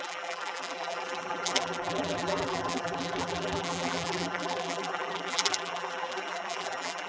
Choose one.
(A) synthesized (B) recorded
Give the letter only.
A